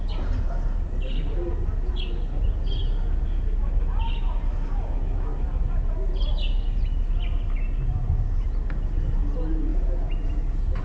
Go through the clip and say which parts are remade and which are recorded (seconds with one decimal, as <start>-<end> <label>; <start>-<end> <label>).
0.0-10.8 recorded